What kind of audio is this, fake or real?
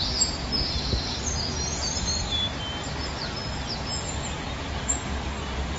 real